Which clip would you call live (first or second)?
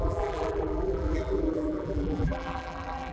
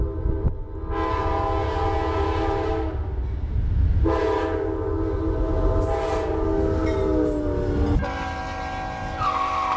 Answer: second